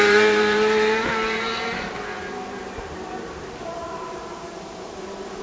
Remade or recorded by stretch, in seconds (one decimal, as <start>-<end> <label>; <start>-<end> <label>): 0.0-2.1 remade; 2.1-3.4 recorded; 3.4-5.4 remade